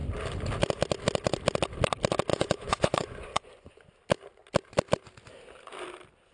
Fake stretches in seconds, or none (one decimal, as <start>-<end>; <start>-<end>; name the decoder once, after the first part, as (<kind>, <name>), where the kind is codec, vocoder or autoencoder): 2.3-3.9 (vocoder, Vocos)